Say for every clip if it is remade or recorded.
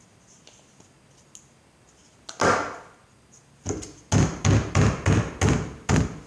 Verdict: recorded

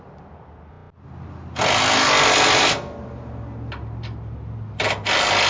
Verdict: recorded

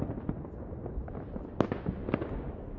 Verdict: recorded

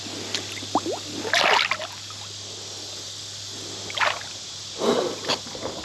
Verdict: recorded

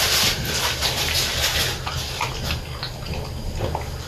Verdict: recorded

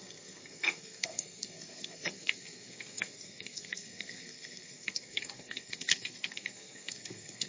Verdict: remade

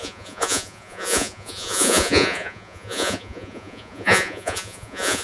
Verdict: remade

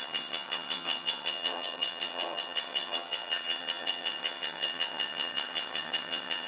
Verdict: remade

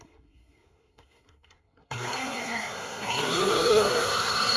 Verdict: remade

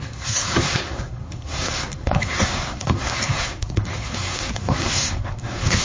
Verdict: remade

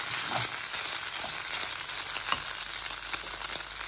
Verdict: recorded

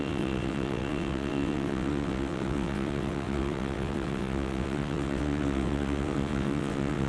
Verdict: remade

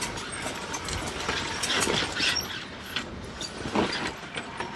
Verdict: recorded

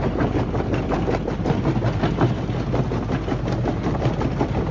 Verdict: recorded